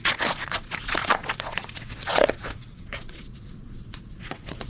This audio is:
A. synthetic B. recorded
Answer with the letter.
A